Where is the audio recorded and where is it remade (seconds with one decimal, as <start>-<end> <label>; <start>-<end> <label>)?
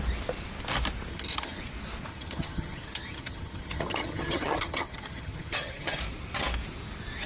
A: 0.0-1.1 recorded; 1.1-1.6 remade; 1.6-2.1 recorded; 2.1-6.0 remade; 6.0-7.3 recorded